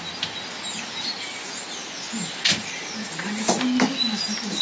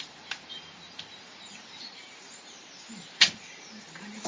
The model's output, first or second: second